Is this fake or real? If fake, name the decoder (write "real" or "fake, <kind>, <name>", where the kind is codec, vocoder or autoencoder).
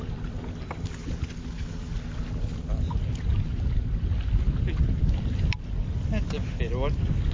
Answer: real